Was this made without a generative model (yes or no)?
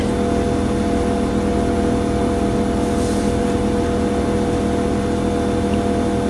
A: yes